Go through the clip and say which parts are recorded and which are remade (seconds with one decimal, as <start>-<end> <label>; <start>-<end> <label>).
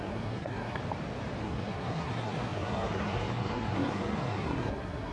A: 0.0-0.8 remade; 0.8-1.4 recorded; 1.4-5.1 remade